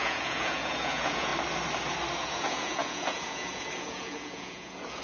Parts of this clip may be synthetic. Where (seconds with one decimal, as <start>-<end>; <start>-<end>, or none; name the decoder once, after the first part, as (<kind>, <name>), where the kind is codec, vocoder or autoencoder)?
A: 0.0-1.3 (vocoder, Vocos); 2.2-5.0